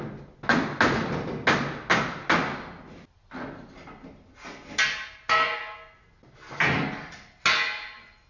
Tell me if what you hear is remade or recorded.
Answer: recorded